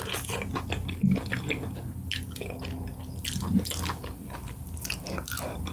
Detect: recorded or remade recorded